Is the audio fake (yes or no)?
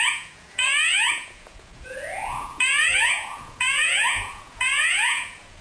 yes